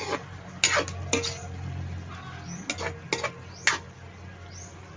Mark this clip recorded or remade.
recorded